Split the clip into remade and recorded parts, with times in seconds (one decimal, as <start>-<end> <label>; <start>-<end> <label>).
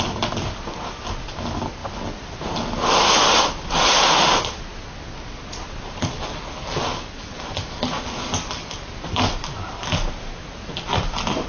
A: 0.0-11.5 recorded